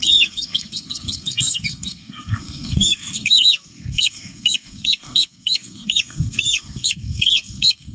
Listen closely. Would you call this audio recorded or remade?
remade